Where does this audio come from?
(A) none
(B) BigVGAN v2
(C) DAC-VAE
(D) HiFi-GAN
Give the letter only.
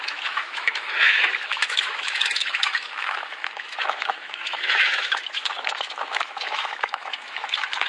C